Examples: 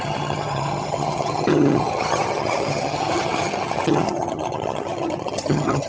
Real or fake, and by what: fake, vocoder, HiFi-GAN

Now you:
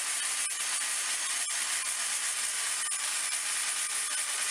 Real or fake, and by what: real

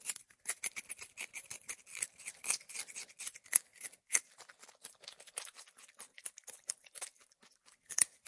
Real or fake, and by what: real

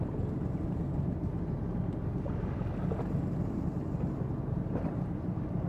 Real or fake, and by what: real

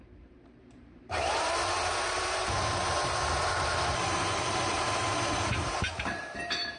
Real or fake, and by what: fake, vocoder, BigVGAN v2